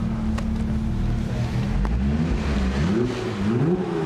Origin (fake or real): real